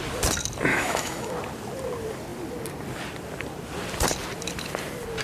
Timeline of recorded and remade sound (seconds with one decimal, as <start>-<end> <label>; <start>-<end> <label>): 0.0-0.7 recorded; 0.7-1.3 remade; 1.3-5.2 recorded